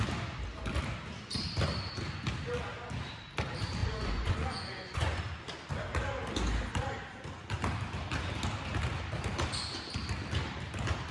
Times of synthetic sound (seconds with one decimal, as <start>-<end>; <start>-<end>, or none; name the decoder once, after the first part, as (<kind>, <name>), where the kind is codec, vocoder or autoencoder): 3.8-5.2 (vocoder, Vocos)